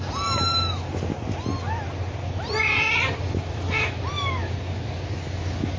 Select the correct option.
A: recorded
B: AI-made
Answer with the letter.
A